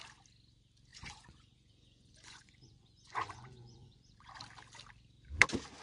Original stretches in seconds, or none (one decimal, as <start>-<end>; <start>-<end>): 0.0-0.9; 4.3-5.8